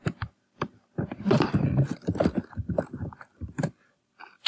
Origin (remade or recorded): remade